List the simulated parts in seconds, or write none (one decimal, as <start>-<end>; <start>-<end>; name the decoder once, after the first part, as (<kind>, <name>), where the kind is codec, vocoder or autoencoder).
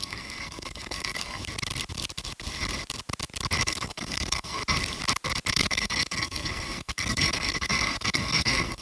0.0-1.4 (codec, SNAC); 3.6-4.6; 5.5-8.8